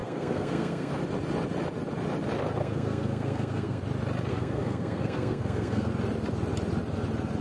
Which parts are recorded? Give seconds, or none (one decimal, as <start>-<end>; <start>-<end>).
0.9-2.6; 3.8-4.3; 5.9-7.4